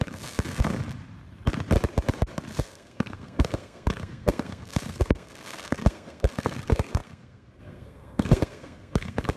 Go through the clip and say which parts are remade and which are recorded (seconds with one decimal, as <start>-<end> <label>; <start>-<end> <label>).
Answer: 0.0-0.8 remade; 0.8-2.6 recorded; 2.6-9.4 remade